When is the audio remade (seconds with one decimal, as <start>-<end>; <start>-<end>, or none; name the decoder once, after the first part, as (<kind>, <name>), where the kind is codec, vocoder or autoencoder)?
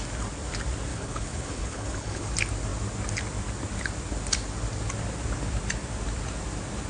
0.9-2.3 (codec, HILCodec)